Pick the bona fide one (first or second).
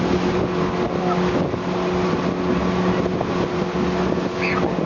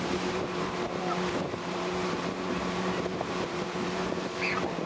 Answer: first